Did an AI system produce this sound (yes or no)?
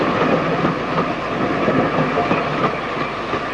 no